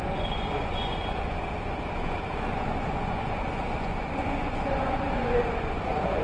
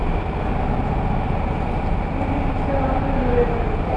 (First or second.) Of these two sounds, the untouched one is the second